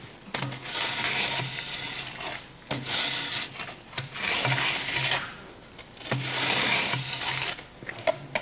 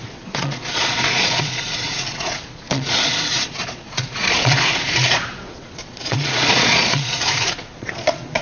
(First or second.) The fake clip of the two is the second